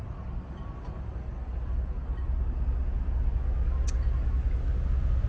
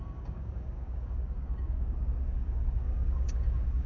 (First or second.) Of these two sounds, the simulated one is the second